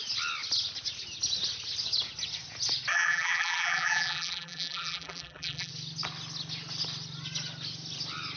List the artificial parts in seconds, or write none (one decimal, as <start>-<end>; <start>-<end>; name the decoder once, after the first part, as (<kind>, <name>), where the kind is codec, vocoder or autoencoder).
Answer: 2.9-5.7 (vocoder, BigVGAN v2)